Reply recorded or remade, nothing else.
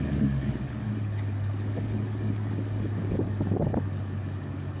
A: remade